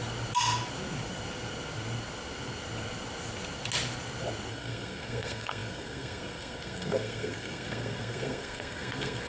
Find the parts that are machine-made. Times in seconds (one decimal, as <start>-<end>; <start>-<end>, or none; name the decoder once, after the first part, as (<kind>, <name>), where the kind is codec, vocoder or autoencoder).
4.5-9.3 (codec, SNAC)